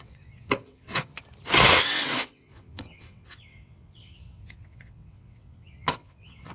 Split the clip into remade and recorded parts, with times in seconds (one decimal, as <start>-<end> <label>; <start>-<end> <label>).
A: 0.0-1.1 remade; 1.1-1.7 recorded; 1.7-6.5 remade

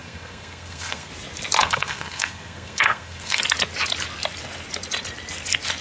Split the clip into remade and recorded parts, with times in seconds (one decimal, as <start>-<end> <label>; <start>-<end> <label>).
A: 0.0-1.1 remade; 1.1-1.6 recorded; 1.6-3.4 remade; 3.4-5.8 recorded

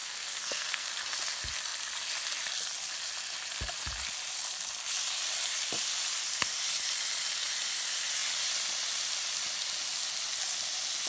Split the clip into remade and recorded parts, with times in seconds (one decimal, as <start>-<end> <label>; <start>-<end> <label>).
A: 0.0-0.9 remade; 0.9-11.1 recorded

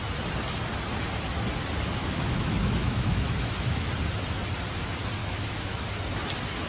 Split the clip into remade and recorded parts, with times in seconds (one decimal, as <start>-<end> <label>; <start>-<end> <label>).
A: 0.0-2.0 recorded; 2.0-3.9 remade; 3.9-5.2 recorded; 5.2-5.8 remade; 5.8-6.7 recorded